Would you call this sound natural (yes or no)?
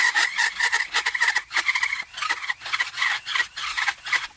yes